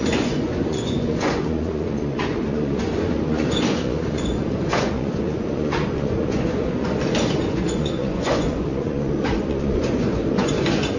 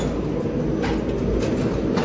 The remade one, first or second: first